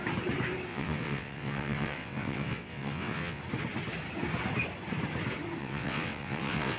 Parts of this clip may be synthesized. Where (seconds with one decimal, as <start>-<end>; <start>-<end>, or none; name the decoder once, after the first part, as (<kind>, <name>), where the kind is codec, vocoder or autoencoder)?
0.7-3.4 (vocoder, WaveNeXt); 5.6-6.8